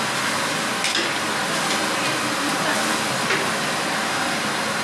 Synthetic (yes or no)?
no